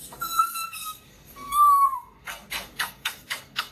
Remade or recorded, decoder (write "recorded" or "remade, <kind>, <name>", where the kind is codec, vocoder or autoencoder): remade, codec, SNAC